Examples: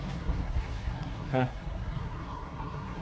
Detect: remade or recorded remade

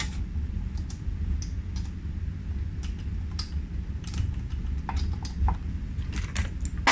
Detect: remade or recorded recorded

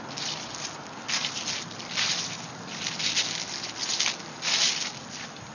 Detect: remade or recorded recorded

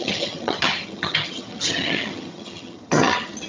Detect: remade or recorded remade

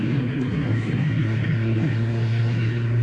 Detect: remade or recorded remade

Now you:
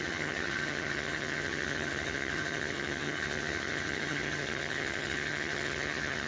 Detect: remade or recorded remade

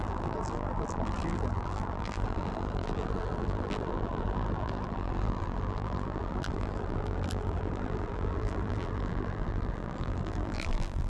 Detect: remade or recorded remade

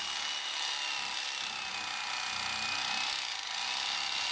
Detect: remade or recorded recorded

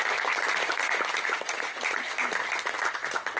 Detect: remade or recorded recorded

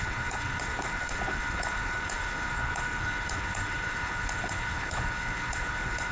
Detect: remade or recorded remade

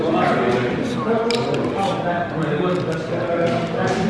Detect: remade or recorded recorded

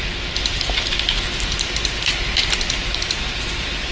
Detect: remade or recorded recorded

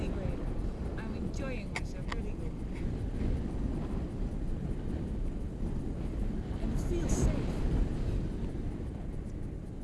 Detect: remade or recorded recorded